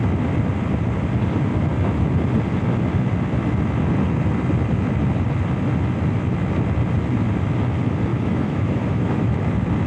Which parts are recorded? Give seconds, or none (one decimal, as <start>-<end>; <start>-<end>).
0.0-8.1; 9.4-9.9